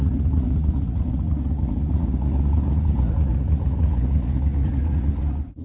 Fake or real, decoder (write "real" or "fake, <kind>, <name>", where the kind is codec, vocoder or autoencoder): fake, vocoder, Vocos